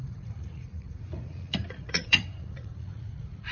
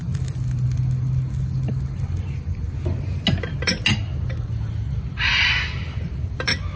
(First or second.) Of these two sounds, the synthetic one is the first